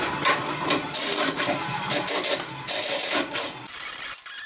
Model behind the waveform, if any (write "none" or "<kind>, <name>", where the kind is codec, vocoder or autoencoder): vocoder, BigVGAN v2